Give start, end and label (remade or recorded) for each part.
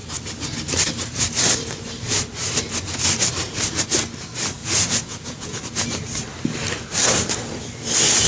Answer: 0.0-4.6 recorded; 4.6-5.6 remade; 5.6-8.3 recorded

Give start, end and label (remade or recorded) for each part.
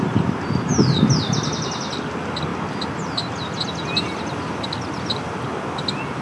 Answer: 0.0-6.2 recorded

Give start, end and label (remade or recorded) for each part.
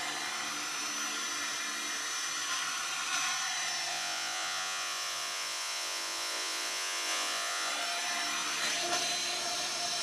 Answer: 0.0-3.9 recorded; 3.9-7.7 remade; 7.7-10.0 recorded